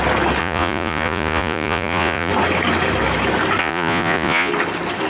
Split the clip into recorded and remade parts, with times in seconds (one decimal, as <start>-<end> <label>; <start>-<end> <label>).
0.0-0.4 recorded; 0.4-2.3 remade; 2.3-3.6 recorded; 3.6-4.5 remade; 4.5-5.1 recorded